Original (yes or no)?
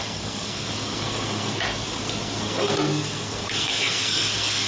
no